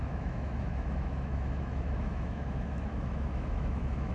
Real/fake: fake